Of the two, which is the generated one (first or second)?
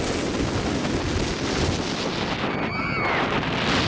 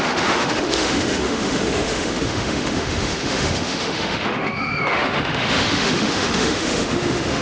second